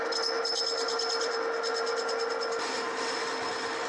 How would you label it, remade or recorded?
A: recorded